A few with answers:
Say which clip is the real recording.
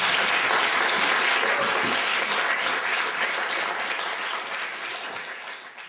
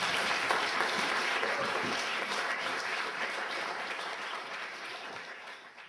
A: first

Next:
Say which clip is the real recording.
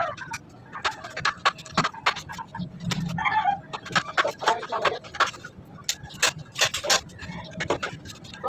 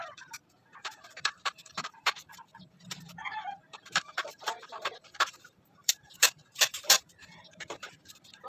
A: first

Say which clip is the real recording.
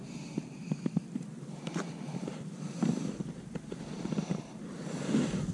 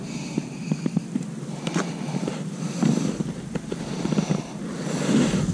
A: second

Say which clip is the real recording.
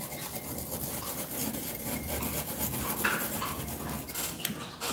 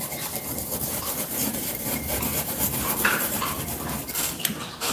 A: first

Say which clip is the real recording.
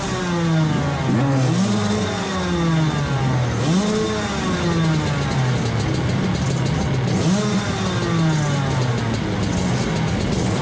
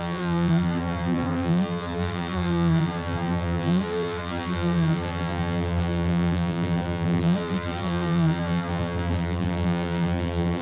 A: first